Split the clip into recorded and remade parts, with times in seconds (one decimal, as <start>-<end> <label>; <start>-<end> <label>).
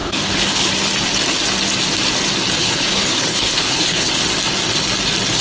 0.0-0.7 remade; 0.7-2.6 recorded; 2.6-4.1 remade; 4.1-5.4 recorded